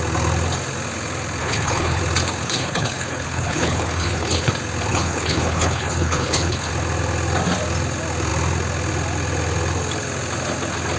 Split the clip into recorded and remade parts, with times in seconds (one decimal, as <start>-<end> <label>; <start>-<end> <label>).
0.0-1.4 recorded; 1.4-2.0 remade; 2.0-2.4 recorded; 2.4-4.5 remade; 4.5-4.9 recorded; 4.9-6.7 remade; 6.7-11.0 recorded